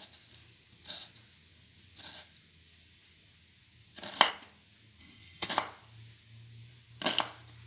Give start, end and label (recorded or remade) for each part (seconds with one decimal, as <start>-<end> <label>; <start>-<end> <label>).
0.0-5.0 recorded; 5.0-5.5 remade; 5.5-7.7 recorded